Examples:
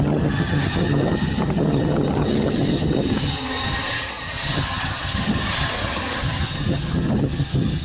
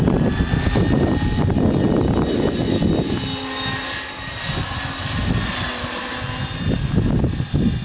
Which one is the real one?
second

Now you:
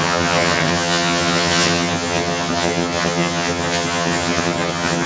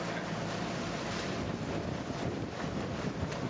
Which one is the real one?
second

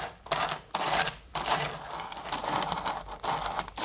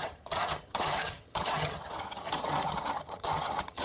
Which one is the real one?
first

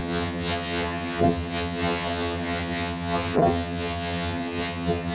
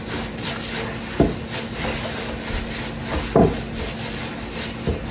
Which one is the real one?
second